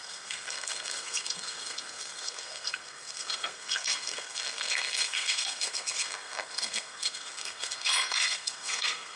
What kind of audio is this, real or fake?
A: fake